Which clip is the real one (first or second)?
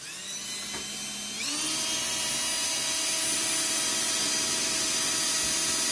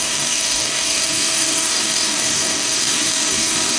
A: first